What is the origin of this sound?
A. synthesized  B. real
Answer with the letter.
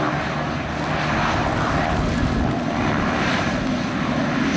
B